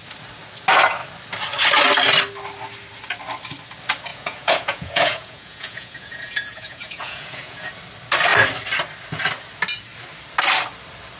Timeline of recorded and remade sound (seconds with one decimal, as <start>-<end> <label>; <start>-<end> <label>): 0.0-4.1 recorded; 4.1-7.7 remade; 7.7-11.2 recorded